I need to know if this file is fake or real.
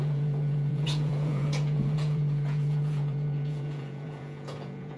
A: fake